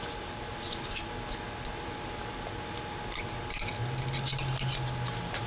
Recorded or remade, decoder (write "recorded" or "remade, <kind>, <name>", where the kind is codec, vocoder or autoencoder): recorded